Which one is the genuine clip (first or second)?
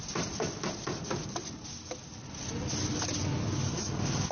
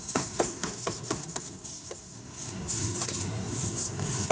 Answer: first